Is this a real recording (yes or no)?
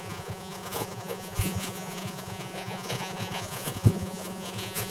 no